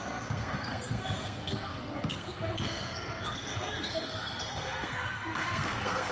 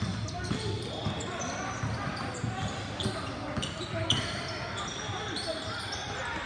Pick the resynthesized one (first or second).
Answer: first